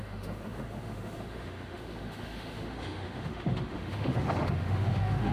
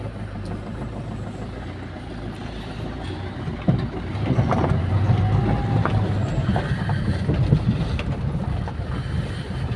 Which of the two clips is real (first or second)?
second